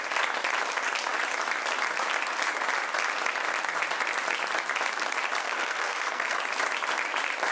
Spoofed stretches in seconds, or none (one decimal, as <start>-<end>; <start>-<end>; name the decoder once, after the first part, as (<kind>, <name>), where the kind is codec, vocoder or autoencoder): 5.4-6.4 (codec, SNAC)